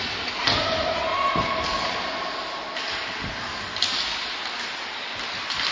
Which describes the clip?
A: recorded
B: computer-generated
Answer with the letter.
A